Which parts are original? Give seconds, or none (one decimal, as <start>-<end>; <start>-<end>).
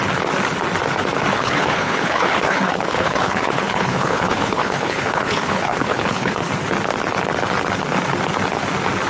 0.0-1.4; 6.5-9.1